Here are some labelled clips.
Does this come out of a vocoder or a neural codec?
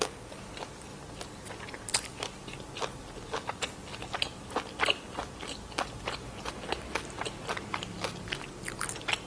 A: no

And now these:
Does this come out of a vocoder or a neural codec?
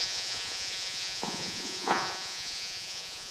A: yes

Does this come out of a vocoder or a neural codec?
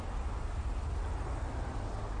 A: no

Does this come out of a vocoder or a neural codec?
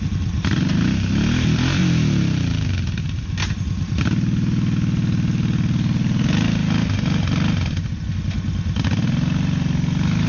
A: no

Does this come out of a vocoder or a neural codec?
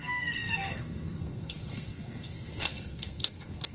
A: yes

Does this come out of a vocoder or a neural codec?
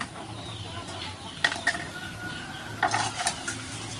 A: no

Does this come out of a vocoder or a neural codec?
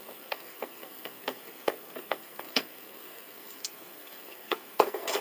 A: yes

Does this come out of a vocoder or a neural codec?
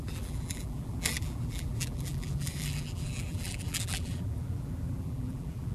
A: yes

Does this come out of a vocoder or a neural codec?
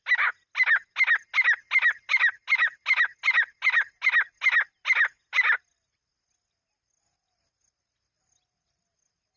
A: no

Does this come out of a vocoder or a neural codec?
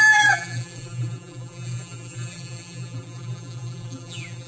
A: yes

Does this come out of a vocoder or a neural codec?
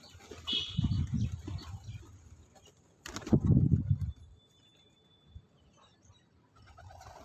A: no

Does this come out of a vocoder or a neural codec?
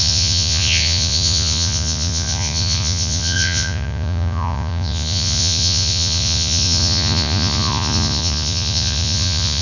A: yes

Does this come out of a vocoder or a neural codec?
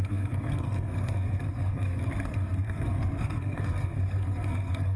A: yes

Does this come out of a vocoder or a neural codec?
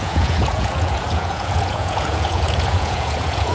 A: yes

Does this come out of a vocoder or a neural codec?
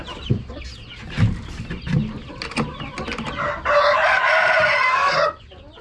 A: no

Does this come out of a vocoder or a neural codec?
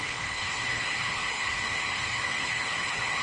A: yes